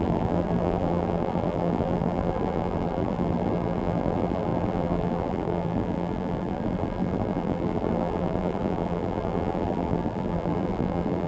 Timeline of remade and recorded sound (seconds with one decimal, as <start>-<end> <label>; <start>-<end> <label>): 0.0-11.3 remade

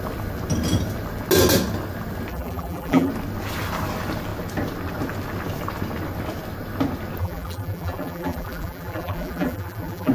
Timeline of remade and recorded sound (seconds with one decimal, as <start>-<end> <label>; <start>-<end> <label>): 0.0-2.3 recorded; 2.3-3.1 remade; 3.1-7.2 recorded; 7.2-10.1 remade

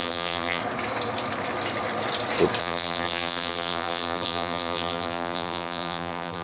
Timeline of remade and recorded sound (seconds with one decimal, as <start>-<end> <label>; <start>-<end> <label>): 0.0-0.6 remade; 0.6-2.6 recorded; 2.6-6.4 remade

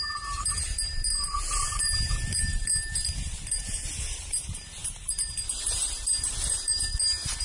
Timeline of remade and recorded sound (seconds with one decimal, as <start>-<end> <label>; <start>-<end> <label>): 0.0-7.4 remade

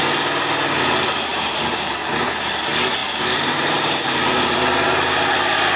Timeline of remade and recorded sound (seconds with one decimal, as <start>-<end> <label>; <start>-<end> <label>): 0.0-1.3 recorded; 1.3-2.1 remade; 2.1-3.0 recorded; 3.0-5.3 remade; 5.3-5.8 recorded

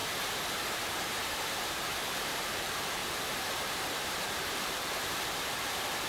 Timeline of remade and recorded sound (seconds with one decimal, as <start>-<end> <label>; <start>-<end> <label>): 0.0-0.5 recorded; 0.5-6.1 remade

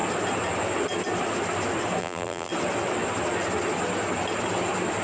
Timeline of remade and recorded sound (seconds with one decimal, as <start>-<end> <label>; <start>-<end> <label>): 0.0-2.0 recorded; 2.0-2.5 remade; 2.5-5.0 recorded